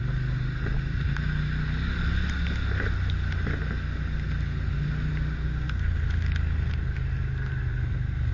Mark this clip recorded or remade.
recorded